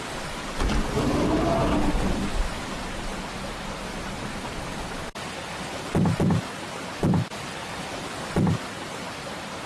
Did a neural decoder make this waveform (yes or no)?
no